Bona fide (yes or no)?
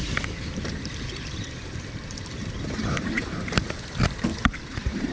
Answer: no